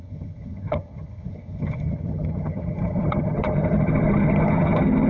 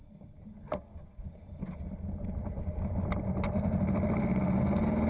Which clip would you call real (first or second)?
second